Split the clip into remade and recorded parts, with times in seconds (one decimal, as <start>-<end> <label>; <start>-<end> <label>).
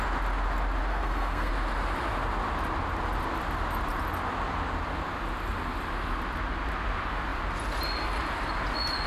0.0-0.9 recorded; 0.9-1.5 remade; 1.5-9.1 recorded